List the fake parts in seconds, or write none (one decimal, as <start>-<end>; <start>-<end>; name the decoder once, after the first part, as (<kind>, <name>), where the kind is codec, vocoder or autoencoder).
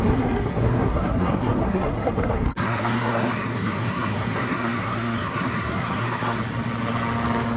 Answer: 0.0-6.4 (codec, SNAC)